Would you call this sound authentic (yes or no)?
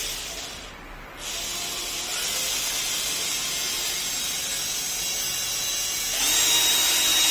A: yes